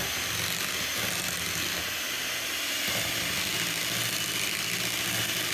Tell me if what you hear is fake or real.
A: real